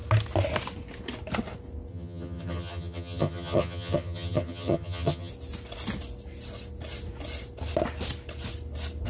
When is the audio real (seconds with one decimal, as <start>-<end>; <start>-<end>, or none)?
0.0-1.9; 5.3-9.1